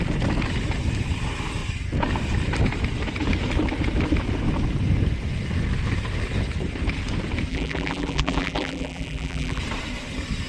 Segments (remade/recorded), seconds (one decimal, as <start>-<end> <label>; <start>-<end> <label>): 0.0-7.5 recorded; 7.5-9.6 remade; 9.6-10.5 recorded